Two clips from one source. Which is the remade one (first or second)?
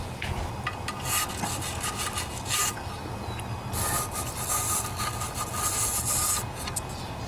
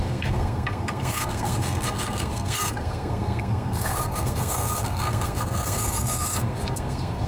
second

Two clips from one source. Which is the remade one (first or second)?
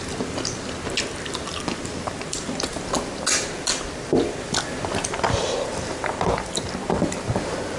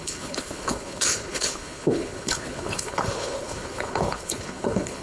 second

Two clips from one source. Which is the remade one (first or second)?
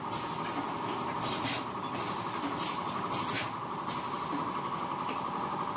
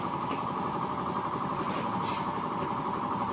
second